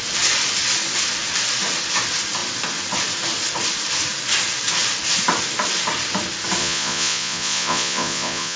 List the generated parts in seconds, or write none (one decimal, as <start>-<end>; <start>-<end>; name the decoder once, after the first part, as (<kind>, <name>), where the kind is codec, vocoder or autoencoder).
6.6-8.6 (vocoder, Vocos)